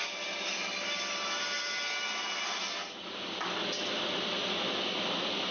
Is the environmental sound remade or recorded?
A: recorded